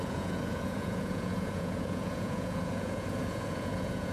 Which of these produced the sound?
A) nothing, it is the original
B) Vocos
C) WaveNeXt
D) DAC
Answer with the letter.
B